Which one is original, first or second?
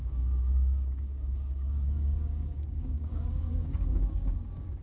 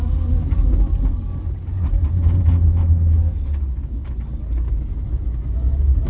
second